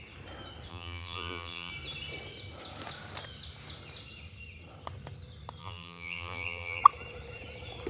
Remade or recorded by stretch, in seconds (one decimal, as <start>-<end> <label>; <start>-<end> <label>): 0.0-0.7 recorded; 0.7-1.7 remade; 1.7-5.6 recorded; 5.6-6.8 remade; 6.8-7.9 recorded